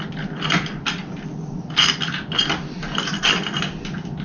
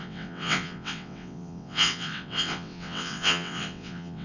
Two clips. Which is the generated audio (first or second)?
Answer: second